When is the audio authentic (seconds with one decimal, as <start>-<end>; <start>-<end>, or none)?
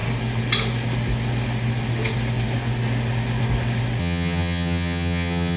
0.0-4.0